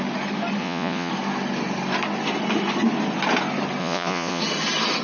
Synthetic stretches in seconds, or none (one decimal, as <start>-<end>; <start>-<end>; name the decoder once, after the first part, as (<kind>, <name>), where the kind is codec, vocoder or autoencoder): 0.6-1.1 (vocoder, Vocos); 3.8-4.4